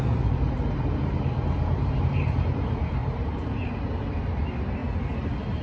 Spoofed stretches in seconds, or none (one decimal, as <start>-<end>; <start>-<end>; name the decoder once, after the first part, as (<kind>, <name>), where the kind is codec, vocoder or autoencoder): 0.0-4.8 (vocoder, BigVGAN v2)

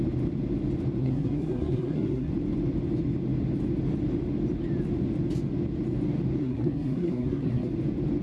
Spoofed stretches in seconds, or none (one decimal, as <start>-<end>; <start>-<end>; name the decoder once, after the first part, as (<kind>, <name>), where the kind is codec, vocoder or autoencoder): 1.0-2.3 (codec, SNAC); 6.4-7.7

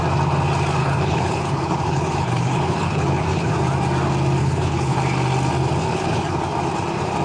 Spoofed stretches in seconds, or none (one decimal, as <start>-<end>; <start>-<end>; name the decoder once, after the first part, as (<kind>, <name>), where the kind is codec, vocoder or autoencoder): 0.8-3.5 (codec, HILCodec); 4.4-5.0; 5.8-6.4

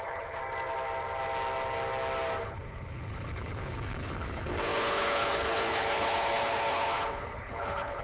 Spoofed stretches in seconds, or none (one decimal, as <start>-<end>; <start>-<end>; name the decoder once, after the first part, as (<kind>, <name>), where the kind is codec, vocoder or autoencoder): 0.0-0.4 (codec, HILCodec); 2.4-8.0